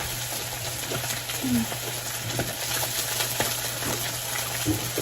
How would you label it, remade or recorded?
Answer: recorded